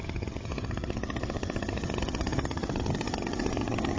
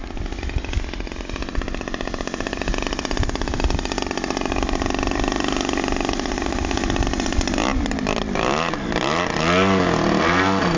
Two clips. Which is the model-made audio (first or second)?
first